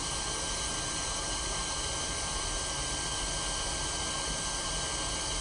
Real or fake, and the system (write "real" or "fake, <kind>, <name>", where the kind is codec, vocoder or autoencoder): real